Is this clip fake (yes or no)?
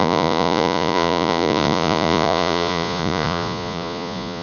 yes